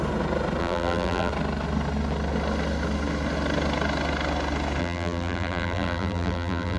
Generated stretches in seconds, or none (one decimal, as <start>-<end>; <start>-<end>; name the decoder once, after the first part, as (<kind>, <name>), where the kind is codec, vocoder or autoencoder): 0.6-1.3 (vocoder, BigVGAN v2); 4.8-6.8